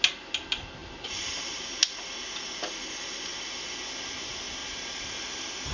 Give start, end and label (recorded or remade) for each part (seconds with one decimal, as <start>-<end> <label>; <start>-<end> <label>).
0.0-0.8 recorded; 0.8-1.7 remade; 1.7-3.3 recorded; 3.3-3.9 remade; 3.9-4.6 recorded; 4.6-5.2 remade; 5.2-5.7 recorded

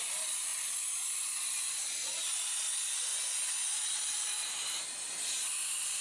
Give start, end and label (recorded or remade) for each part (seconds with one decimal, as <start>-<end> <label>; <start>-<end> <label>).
0.0-6.0 recorded

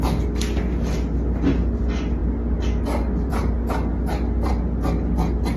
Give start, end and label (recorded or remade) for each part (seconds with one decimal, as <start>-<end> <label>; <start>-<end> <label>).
0.0-5.6 recorded

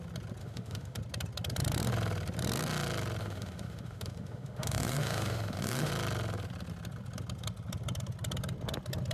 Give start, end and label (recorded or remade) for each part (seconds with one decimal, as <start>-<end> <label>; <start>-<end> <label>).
0.0-0.4 recorded; 0.4-1.0 remade; 1.0-3.2 recorded; 3.2-5.9 remade; 5.9-9.1 recorded